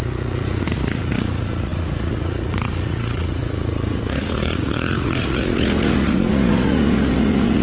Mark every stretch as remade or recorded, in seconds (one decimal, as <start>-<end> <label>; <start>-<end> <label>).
0.0-7.6 remade